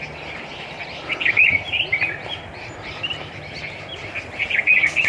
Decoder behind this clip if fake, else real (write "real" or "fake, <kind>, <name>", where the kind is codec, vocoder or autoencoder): fake, vocoder, BigVGAN v2